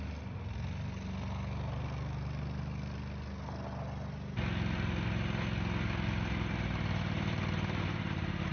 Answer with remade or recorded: recorded